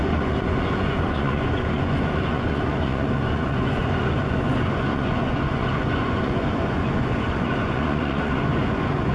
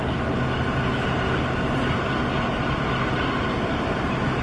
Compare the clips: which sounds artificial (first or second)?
first